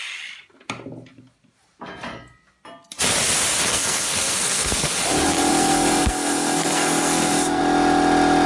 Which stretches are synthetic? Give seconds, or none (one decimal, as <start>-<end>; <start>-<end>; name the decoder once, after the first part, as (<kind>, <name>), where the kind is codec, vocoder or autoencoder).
3.7-5.0 (codec, SNAC); 5.5-7.6